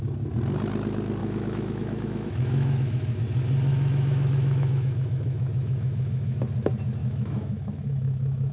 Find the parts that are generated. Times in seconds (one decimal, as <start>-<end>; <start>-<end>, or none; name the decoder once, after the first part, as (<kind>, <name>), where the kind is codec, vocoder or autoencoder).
1.2-3.2 (autoencoder, DAC-VAE); 3.7-6.4; 7.0-8.5